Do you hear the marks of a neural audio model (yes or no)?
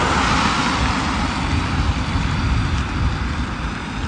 no